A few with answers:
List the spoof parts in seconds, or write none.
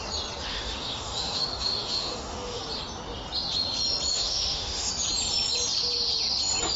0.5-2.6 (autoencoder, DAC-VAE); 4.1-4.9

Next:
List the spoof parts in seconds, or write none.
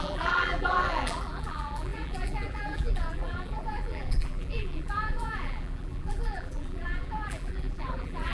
0.0-8.3 (vocoder, BigVGAN v2)